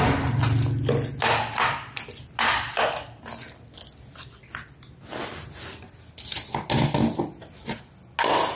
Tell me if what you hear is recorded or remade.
recorded